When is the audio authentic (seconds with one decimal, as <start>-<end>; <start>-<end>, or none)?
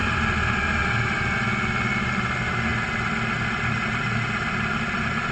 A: 0.8-5.3